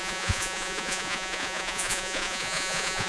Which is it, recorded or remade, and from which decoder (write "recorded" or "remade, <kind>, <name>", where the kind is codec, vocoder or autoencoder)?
remade, vocoder, Vocos